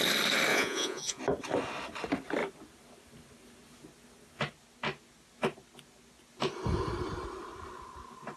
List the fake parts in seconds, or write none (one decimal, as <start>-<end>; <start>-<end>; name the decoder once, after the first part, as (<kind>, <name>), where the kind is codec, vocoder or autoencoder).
0.5-1.2 (vocoder, Vocos)